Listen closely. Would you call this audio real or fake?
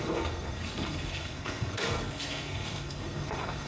fake